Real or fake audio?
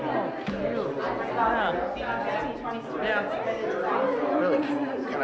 real